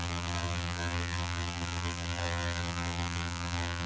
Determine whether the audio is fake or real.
fake